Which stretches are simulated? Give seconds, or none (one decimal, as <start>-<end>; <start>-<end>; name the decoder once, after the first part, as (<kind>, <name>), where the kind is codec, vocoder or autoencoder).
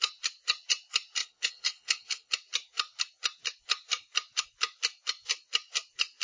1.2-2.3 (codec, HILCodec)